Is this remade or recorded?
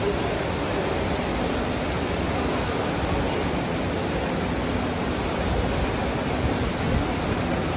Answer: recorded